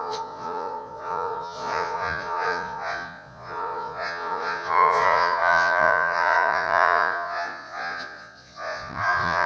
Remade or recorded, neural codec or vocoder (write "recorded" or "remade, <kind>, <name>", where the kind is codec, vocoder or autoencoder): remade, vocoder, Vocos